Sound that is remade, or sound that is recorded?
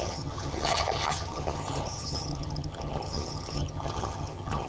remade